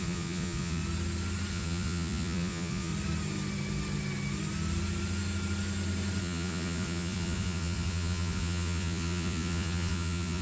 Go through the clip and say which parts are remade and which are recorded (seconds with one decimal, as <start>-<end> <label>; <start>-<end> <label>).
0.0-0.8 remade; 0.8-1.5 recorded; 1.5-2.9 remade; 2.9-6.2 recorded; 6.2-10.4 remade